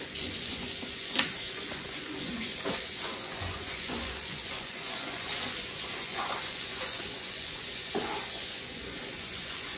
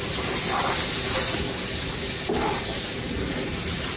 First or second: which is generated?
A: first